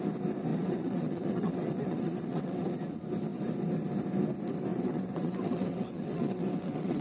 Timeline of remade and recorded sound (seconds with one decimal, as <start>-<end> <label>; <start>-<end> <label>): 0.0-0.5 recorded; 0.5-2.7 remade; 2.7-4.7 recorded; 4.7-7.0 remade